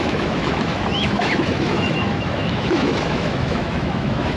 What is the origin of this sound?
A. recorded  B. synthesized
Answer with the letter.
B